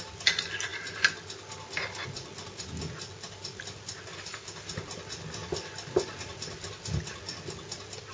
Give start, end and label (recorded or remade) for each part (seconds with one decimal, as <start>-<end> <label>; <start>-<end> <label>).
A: 0.0-8.1 recorded